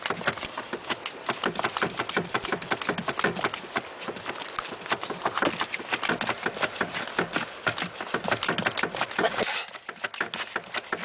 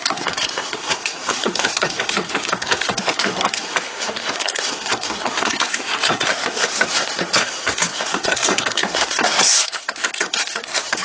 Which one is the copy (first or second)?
second